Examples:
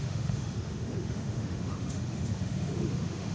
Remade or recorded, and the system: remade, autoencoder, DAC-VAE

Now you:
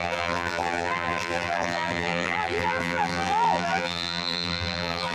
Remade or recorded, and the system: remade, vocoder, BigVGAN v2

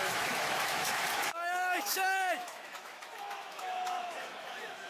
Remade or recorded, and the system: remade, autoencoder, DAC-VAE